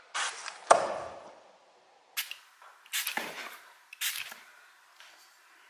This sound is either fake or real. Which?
real